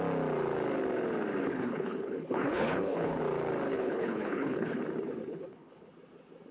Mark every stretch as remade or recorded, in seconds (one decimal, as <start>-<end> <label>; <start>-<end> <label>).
0.0-1.4 recorded; 1.4-3.2 remade; 3.2-3.7 recorded; 3.7-4.8 remade; 4.8-5.3 recorded; 5.3-5.9 remade; 5.9-6.5 recorded